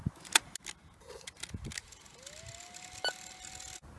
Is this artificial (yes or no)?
no